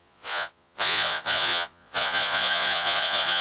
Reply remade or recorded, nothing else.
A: remade